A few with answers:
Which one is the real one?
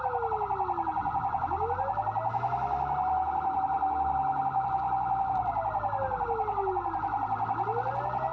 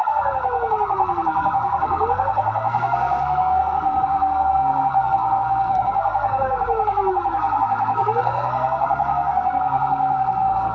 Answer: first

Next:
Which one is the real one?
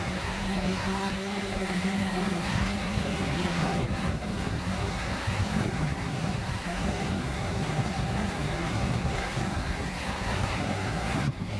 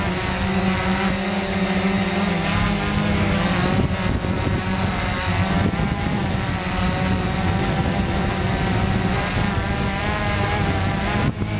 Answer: second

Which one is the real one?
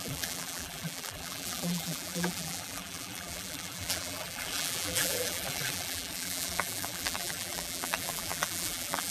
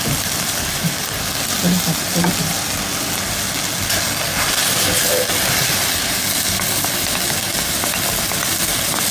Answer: second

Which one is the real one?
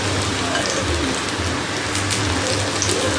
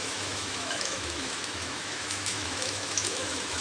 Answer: first